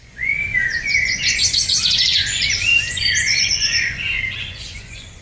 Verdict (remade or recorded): remade